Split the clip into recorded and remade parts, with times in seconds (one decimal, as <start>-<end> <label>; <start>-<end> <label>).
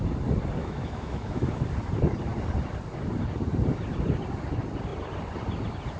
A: 0.0-0.6 recorded; 0.6-1.6 remade; 1.6-6.0 recorded